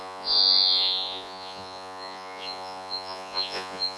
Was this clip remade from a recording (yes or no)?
yes